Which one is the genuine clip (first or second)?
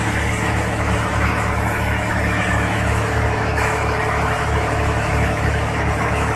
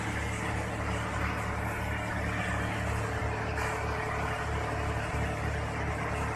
second